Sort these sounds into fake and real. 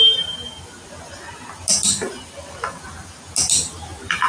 real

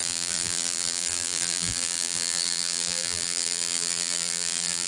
fake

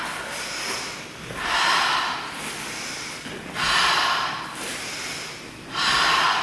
real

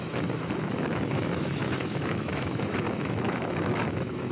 fake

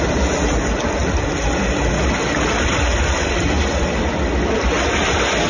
real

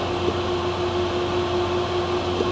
real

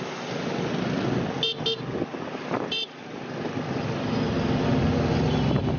real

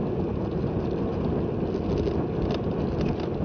real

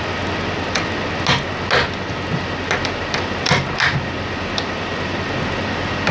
real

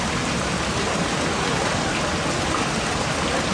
real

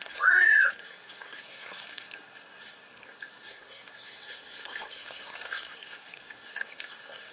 fake